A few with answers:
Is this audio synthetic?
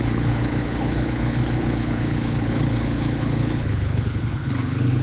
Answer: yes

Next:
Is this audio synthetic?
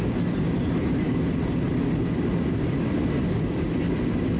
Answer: no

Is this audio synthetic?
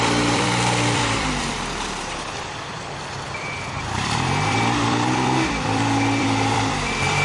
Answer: yes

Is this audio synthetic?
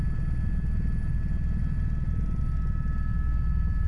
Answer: no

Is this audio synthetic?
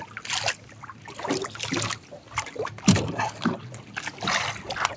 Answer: no